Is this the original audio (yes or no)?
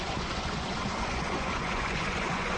no